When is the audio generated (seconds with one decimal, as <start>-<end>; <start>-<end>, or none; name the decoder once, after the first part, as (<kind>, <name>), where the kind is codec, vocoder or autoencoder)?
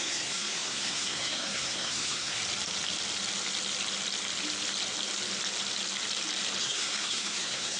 0.0-2.4 (codec, SNAC); 6.6-7.8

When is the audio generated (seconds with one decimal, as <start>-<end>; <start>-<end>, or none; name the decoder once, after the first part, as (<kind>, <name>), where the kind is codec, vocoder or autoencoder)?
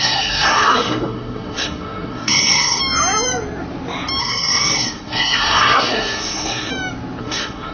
0.0-2.8 (codec, SNAC); 4.2-6.7; 7.2-7.7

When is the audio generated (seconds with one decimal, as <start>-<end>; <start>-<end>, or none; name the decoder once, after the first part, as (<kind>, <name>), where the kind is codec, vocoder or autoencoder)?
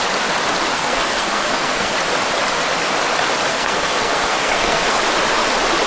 0.7-1.9 (codec, SNAC); 3.5-5.0